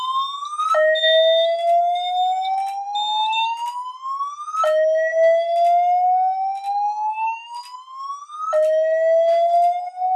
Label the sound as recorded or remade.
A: recorded